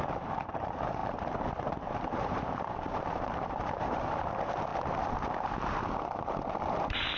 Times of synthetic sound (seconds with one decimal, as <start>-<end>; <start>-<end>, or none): 0.0-4.7; 6.6-7.2